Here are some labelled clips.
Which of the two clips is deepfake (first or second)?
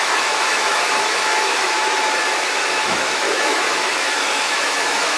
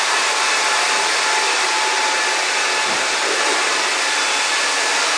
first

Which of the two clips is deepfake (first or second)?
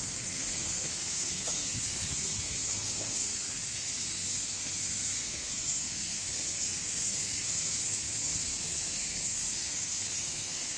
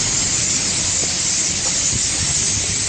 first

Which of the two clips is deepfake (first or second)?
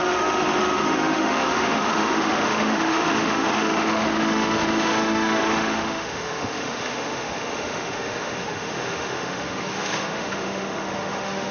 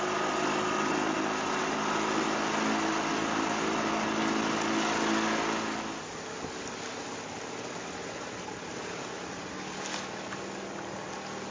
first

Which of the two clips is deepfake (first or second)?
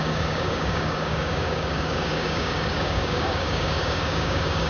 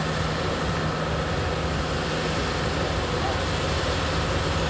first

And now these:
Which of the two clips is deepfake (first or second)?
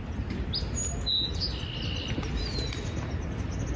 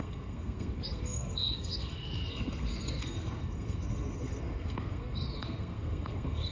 second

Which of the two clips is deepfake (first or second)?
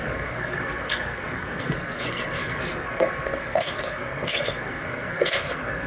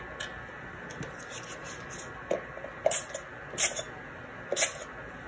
first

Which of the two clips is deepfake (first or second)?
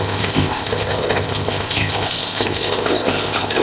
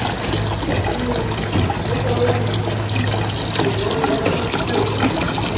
first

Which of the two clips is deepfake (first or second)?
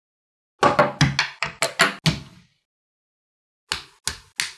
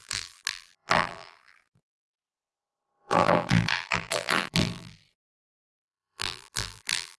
second